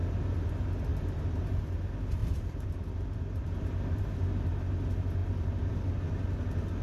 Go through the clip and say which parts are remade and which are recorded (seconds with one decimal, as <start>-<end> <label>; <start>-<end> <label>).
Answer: 0.0-0.9 recorded; 0.9-1.6 remade; 1.6-2.2 recorded; 2.2-4.0 remade; 4.0-5.2 recorded; 5.2-5.7 remade; 5.7-6.8 recorded